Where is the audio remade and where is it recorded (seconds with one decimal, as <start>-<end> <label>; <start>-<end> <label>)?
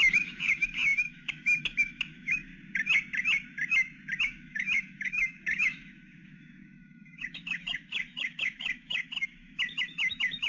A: 0.0-2.5 remade; 2.5-4.2 recorded; 4.2-10.5 remade